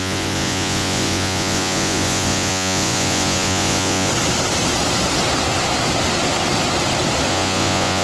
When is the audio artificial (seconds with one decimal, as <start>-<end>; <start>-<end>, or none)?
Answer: 0.0-4.1; 7.3-8.0